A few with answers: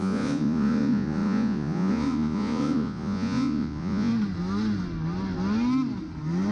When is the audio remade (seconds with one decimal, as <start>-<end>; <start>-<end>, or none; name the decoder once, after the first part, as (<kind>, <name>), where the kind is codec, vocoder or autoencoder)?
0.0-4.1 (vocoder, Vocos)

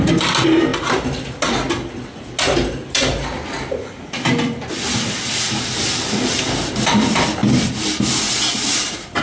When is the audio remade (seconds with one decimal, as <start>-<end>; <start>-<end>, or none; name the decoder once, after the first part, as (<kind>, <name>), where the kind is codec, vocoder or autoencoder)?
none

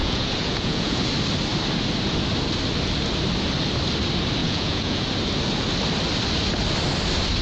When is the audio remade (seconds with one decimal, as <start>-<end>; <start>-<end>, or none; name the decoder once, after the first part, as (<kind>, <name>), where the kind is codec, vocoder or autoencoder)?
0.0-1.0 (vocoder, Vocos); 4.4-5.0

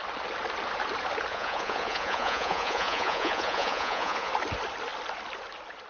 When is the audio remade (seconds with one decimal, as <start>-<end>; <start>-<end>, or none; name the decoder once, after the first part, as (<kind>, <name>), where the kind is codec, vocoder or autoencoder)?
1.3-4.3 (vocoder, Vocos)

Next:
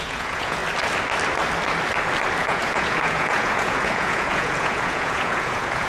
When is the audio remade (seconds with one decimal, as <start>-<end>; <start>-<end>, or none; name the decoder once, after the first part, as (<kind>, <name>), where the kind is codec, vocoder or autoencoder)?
0.0-0.6 (vocoder, Vocos); 2.4-5.9